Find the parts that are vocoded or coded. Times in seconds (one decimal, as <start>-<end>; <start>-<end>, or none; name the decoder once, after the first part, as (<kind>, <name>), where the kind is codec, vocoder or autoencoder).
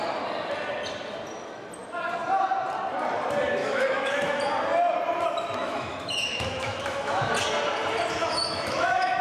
3.6-4.4 (autoencoder, DAC-VAE); 5.6-7.3; 8.2-9.2